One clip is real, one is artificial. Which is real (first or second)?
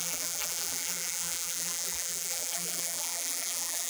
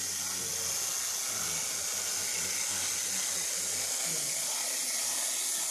second